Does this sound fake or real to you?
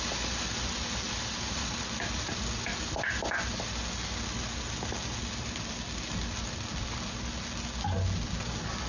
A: real